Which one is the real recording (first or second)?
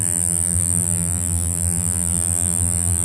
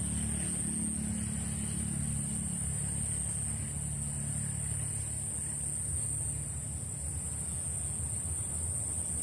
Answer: second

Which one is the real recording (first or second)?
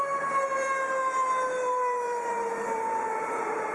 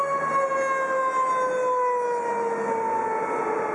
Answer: second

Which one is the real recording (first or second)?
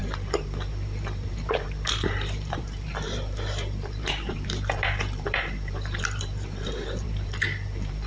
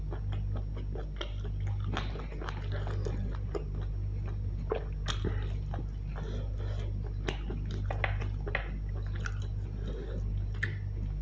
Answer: second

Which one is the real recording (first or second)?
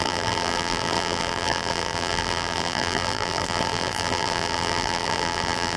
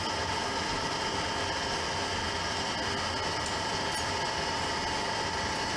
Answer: second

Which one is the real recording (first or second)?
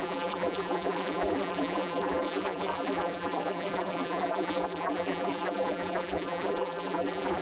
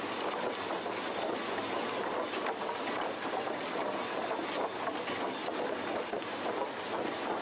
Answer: second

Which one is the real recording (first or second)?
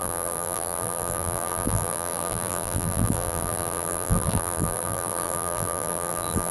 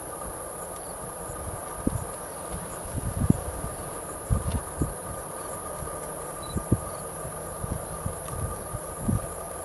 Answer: second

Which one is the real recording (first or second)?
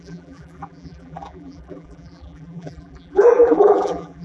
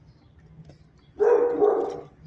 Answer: second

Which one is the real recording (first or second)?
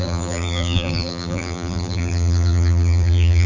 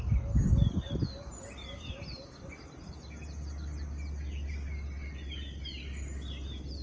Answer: second